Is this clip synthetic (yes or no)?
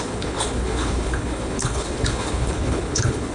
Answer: yes